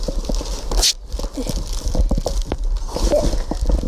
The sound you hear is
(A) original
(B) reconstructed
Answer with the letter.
A